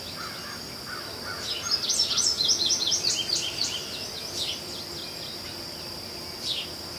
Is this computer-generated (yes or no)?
no